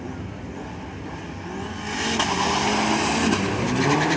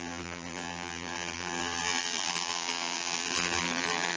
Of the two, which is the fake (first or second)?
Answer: second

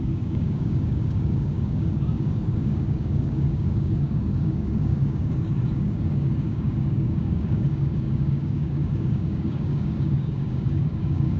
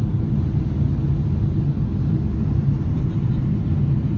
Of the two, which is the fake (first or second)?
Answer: first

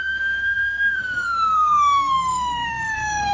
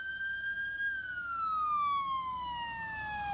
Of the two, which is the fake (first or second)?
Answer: first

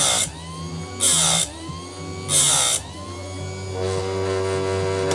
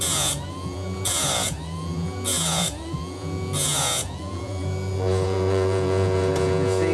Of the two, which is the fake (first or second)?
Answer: second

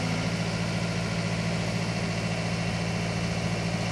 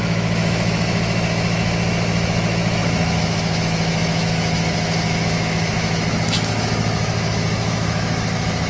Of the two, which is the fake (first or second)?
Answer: second